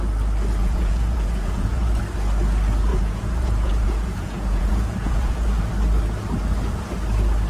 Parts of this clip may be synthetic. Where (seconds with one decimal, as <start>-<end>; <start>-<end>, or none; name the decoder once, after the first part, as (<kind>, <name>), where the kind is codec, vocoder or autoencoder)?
0.6-2.0 (vocoder, Vocos); 2.9-5.7